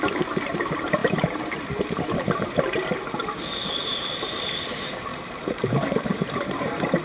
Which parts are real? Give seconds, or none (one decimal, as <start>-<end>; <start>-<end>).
0.0-5.1; 6.6-7.0